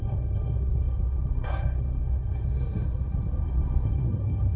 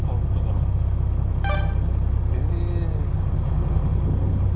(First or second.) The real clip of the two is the second